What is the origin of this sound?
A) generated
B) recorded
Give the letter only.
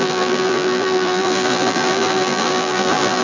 A